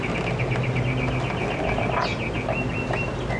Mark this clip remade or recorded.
recorded